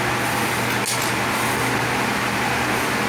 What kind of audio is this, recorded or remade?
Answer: recorded